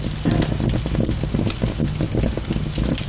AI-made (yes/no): no